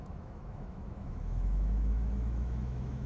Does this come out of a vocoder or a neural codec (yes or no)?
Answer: yes